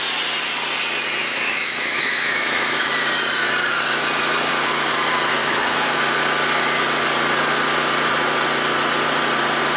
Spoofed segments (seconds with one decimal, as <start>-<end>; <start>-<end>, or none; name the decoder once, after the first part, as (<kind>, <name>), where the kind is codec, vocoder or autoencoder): 1.2-2.9 (autoencoder, DAC-VAE); 5.4-6.0